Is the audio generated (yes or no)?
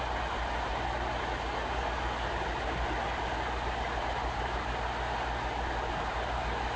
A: no